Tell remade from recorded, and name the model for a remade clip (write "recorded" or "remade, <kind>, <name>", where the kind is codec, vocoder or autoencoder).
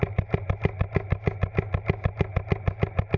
recorded